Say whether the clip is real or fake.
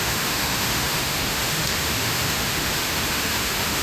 fake